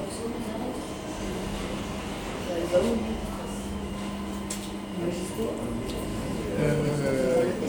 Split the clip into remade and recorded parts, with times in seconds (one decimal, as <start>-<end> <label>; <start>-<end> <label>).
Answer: 0.0-3.2 recorded; 3.2-3.9 remade; 3.9-6.1 recorded; 6.1-6.9 remade; 6.9-7.7 recorded